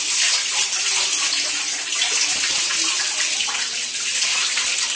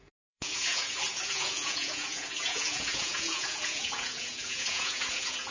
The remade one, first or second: second